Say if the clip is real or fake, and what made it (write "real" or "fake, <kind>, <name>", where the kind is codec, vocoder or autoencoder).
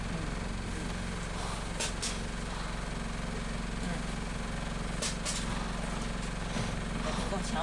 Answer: real